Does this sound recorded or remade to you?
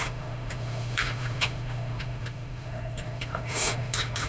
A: remade